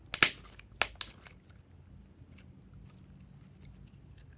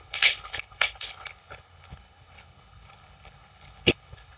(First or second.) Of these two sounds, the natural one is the first